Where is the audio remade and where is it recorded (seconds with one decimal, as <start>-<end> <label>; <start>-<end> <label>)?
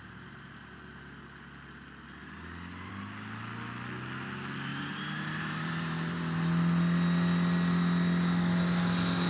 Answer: 0.0-4.7 recorded; 4.7-6.2 remade; 6.2-9.3 recorded